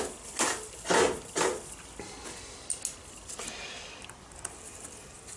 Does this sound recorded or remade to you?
recorded